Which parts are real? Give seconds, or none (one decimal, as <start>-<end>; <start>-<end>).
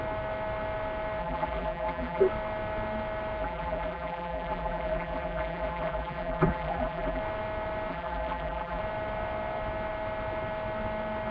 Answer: 0.0-1.2; 2.2-3.4; 7.2-7.9; 8.8-11.3